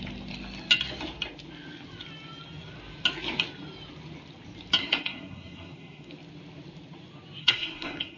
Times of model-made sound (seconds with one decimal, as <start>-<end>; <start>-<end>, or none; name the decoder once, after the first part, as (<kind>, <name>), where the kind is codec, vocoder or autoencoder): 4.8-6.1 (codec, SNAC); 7.4-8.2